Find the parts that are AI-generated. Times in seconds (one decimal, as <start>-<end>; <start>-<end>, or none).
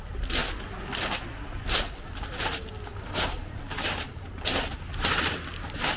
2.9-4.9